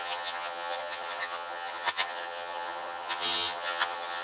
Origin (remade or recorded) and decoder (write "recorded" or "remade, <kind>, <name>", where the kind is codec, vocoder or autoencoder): remade, vocoder, HiFi-GAN